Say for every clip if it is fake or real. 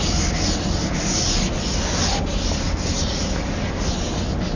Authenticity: real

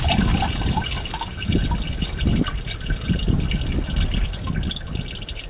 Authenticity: real